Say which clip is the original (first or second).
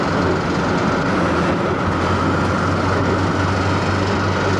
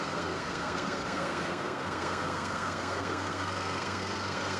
first